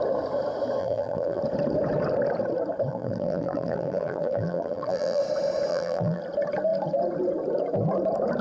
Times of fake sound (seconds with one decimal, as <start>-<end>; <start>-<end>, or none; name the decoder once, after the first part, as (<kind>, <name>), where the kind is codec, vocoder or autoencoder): 0.8-1.4 (vocoder, BigVGAN v2); 2.9-5.2; 5.7-6.2